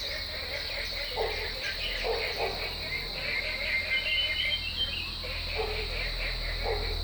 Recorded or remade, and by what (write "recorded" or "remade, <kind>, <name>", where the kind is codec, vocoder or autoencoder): recorded